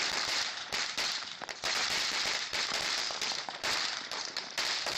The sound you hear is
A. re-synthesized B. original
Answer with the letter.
A